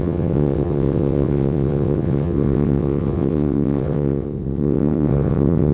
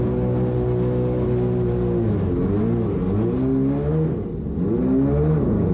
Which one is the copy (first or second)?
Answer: first